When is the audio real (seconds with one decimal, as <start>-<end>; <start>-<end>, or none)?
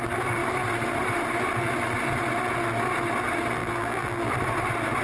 0.0-3.6; 4.3-5.0